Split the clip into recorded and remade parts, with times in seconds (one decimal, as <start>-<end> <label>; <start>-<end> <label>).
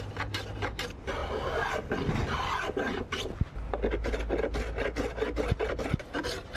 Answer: 0.0-6.6 recorded